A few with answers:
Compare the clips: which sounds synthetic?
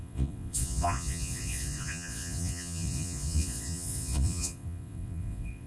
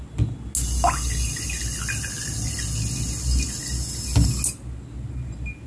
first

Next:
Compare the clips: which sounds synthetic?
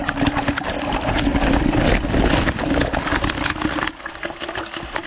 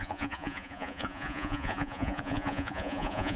second